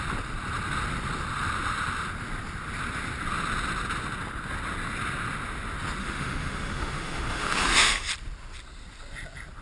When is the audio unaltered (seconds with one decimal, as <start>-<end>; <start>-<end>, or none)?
0.0-6.0; 8.1-9.6